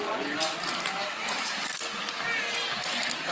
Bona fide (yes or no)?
yes